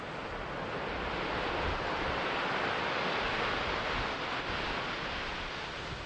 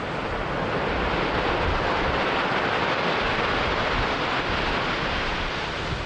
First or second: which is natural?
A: first